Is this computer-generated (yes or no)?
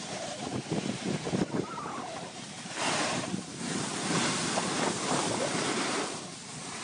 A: yes